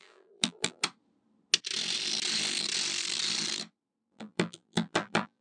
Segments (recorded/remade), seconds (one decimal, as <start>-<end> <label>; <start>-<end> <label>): 0.0-0.8 remade; 0.8-4.0 recorded; 4.0-5.4 remade